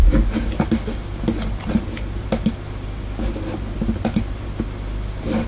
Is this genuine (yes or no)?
yes